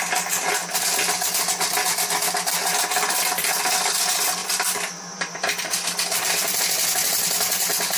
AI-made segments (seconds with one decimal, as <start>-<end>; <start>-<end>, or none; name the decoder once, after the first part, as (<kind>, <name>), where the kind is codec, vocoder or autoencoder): 4.4-6.6 (vocoder, BigVGAN v2)